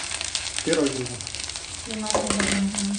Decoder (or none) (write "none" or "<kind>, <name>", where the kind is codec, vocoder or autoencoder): vocoder, BigVGAN v2